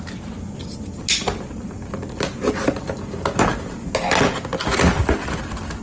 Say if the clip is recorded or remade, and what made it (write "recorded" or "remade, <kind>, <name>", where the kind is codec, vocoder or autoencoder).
recorded